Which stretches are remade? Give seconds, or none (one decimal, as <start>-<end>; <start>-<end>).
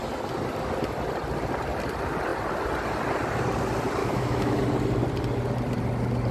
4.0-4.6